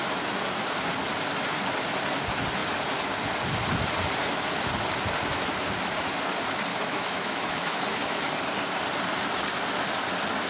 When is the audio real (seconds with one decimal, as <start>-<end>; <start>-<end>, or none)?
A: 0.0-6.7; 8.2-10.5